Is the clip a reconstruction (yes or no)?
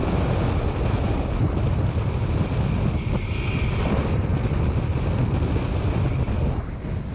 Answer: no